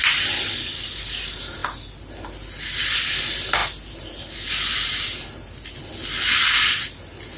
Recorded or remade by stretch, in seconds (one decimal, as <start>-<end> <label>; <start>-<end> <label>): 0.0-7.4 recorded